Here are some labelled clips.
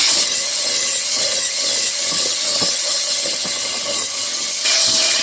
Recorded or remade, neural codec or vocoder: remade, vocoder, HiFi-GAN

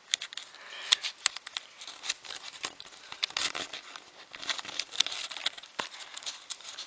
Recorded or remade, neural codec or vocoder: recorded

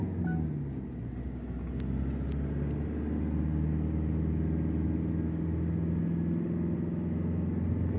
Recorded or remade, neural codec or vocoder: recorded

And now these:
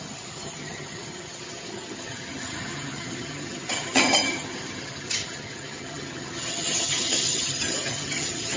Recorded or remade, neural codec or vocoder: remade, vocoder, HiFi-GAN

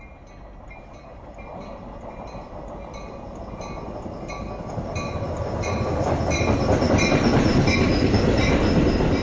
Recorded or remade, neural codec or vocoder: recorded